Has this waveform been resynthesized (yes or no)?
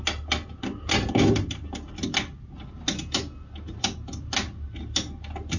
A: no